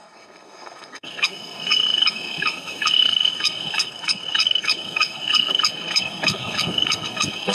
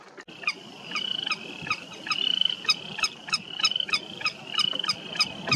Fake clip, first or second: first